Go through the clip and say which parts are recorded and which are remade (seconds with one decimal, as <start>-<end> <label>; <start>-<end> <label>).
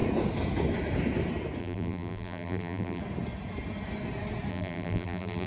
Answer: 0.0-1.6 recorded; 1.6-3.0 remade; 3.0-4.5 recorded; 4.5-5.5 remade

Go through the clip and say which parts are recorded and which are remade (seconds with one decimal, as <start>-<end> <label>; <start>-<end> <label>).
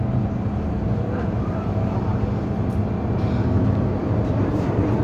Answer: 0.0-4.0 recorded; 4.0-5.0 remade